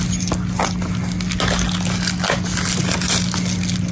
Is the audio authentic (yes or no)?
yes